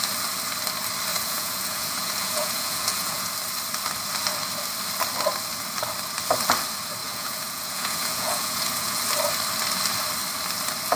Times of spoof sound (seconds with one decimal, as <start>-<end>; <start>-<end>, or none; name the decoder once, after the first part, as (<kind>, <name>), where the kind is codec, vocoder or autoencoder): 1.1-3.3 (vocoder, Vocos); 7.0-9.0